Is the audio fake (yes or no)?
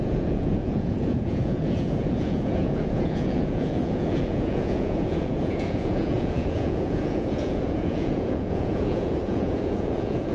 yes